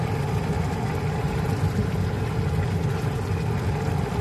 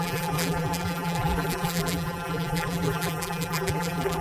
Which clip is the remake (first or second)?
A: second